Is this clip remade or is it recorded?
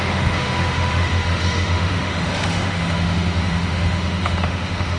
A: remade